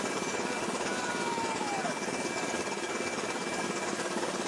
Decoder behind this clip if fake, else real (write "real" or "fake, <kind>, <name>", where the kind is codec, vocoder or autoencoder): fake, codec, DAC